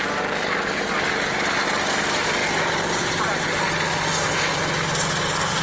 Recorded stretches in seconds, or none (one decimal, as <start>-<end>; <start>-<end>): 0.0-5.6